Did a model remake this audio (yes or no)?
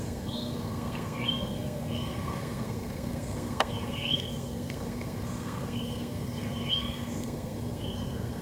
yes